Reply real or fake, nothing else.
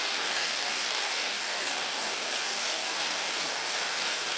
fake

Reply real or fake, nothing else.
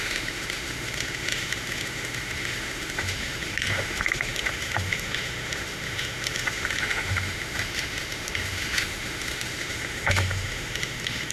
fake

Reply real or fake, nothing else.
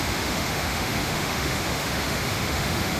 fake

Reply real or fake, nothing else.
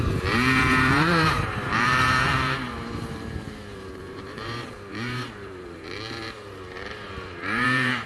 fake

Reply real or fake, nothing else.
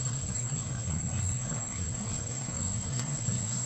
fake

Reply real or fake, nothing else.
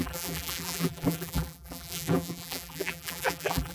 fake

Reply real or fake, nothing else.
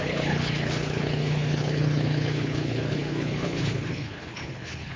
fake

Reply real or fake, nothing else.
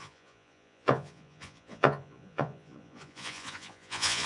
fake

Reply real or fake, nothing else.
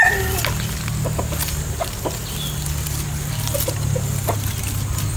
real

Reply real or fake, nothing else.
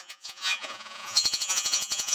fake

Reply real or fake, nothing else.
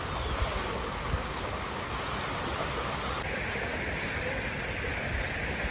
real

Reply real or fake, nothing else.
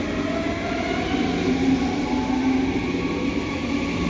real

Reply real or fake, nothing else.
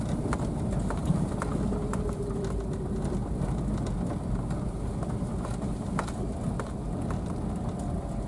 real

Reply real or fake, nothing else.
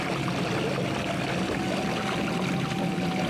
real